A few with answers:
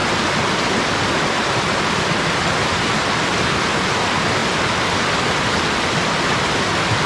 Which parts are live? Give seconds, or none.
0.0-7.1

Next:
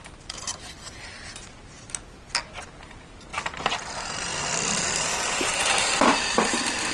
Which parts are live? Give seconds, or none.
0.5-2.9; 3.3-3.9; 4.3-5.2

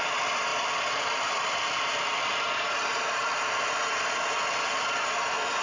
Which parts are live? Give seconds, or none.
0.0-0.5; 3.7-5.6

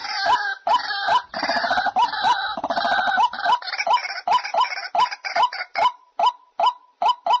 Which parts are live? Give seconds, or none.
0.0-1.3

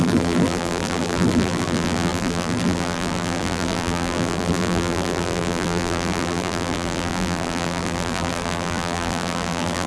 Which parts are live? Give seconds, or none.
none

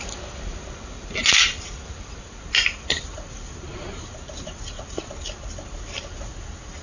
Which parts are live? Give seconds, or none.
0.0-6.8

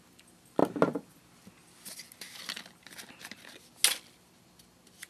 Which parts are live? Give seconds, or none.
0.0-5.1

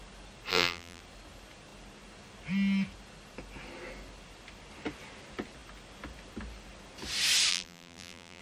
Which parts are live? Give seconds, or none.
0.0-0.5; 1.0-7.5